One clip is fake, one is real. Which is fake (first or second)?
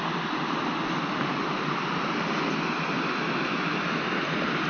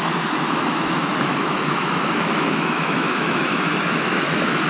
second